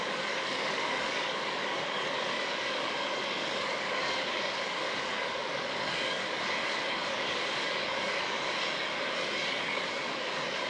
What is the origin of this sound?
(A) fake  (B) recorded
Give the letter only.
A